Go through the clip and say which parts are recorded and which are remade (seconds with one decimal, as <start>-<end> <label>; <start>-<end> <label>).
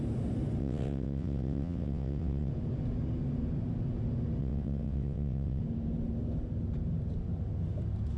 0.0-0.6 recorded; 0.6-2.5 remade; 2.5-4.4 recorded; 4.4-5.6 remade; 5.6-8.2 recorded